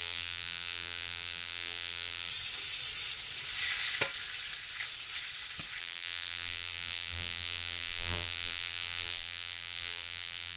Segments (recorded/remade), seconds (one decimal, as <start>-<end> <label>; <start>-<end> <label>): 0.0-2.3 remade; 2.3-5.8 recorded; 5.8-10.6 remade

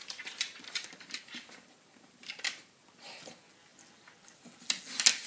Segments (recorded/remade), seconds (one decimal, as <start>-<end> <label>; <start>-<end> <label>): 0.0-3.2 remade; 3.2-5.3 recorded

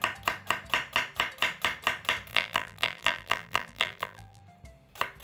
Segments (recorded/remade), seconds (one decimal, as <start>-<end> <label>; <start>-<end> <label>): 0.0-2.3 recorded; 2.3-4.4 remade; 4.4-5.2 recorded

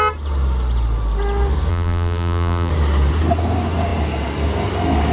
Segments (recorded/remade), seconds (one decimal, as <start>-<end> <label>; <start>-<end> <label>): 0.0-1.7 recorded; 1.7-2.7 remade; 2.7-5.1 recorded

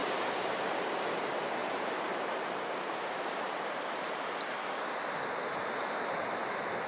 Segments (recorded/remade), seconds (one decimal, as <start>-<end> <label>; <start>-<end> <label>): 0.0-0.9 remade; 0.9-1.6 recorded; 1.6-4.7 remade; 4.7-6.9 recorded

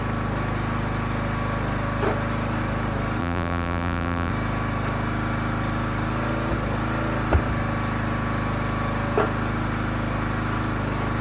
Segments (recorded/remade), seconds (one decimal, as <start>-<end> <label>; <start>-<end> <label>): 0.0-3.2 recorded; 3.2-4.3 remade; 4.3-11.2 recorded

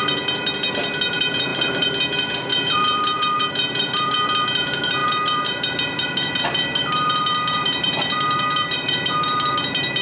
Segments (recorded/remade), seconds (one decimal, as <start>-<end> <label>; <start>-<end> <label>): 0.0-10.0 remade

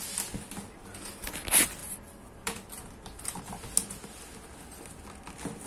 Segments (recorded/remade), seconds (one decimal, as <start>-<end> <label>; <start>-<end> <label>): 0.0-1.8 recorded; 1.8-3.4 remade; 3.4-5.7 recorded